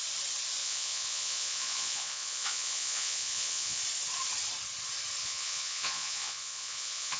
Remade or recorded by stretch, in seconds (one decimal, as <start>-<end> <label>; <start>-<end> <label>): 0.0-0.6 recorded; 0.6-3.8 remade; 3.8-5.2 recorded; 5.2-7.2 remade